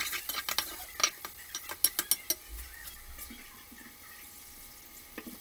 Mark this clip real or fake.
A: real